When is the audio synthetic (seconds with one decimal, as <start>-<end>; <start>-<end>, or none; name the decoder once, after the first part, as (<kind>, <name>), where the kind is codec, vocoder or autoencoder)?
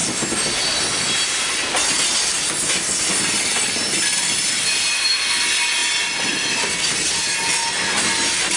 none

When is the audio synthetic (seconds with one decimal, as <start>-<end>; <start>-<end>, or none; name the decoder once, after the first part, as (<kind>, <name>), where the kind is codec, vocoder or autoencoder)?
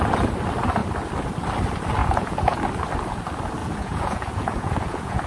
2.0-2.6 (vocoder, Vocos); 3.6-5.3